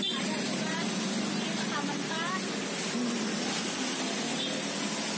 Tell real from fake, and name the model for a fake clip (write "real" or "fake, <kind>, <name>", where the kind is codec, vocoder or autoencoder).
real